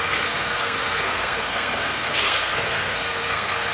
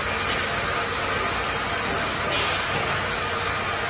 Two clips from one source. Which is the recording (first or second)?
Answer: second